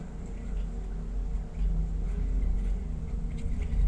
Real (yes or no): yes